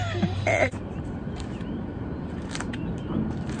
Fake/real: fake